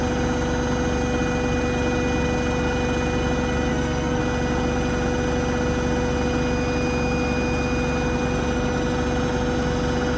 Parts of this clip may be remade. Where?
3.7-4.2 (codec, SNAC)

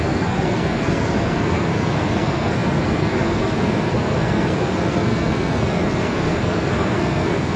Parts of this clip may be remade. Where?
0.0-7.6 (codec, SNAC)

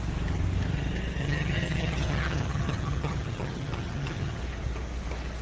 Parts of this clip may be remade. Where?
1.2-4.4 (vocoder, HiFi-GAN)